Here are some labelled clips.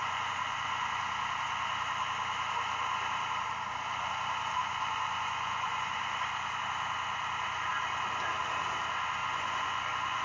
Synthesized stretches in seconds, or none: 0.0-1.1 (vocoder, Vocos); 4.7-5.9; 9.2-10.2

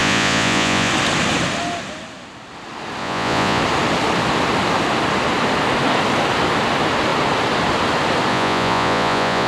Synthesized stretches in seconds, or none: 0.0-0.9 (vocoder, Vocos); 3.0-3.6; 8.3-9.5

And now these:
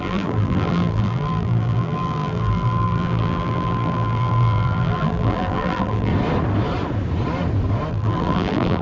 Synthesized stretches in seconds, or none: 0.0-6.1 (vocoder, BigVGAN v2); 7.9-8.8

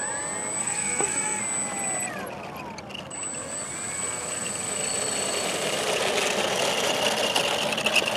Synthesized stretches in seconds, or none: 0.6-1.4 (codec, SNAC)

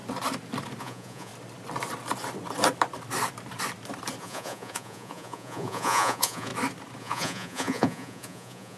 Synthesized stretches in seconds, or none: 0.8-1.3 (vocoder, Vocos); 4.2-6.5; 7.0-8.8